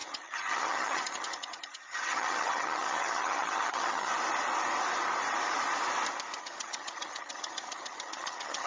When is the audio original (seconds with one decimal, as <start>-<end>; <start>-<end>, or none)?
4.1-6.4